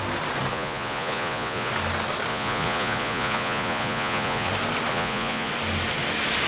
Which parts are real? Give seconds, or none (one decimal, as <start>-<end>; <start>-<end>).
0.0-0.5; 1.7-2.3; 4.5-4.9; 5.5-6.5